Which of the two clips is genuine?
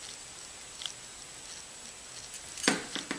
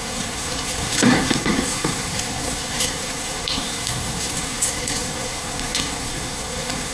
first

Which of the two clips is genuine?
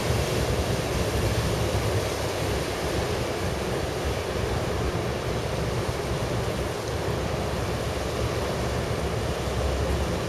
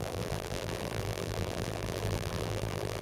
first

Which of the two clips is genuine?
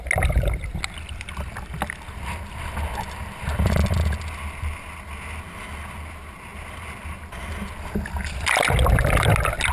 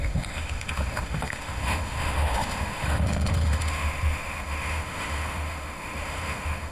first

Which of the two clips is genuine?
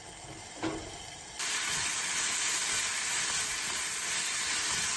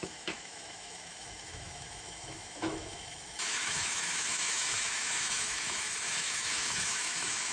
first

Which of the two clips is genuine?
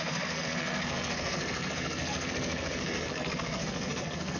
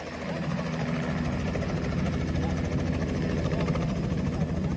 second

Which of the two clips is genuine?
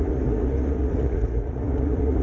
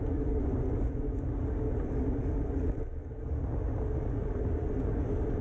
second